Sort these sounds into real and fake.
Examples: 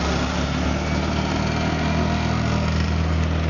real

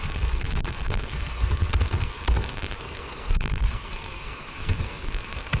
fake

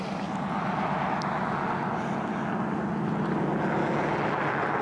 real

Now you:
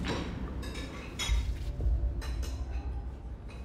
real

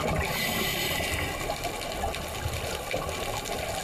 real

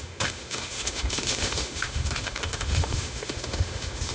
fake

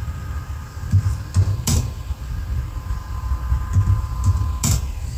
real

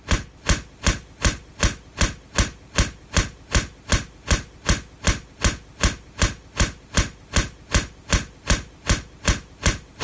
real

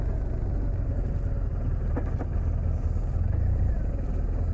real